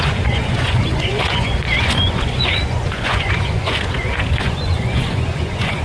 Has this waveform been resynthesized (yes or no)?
yes